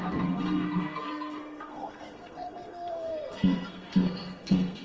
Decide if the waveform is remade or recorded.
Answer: remade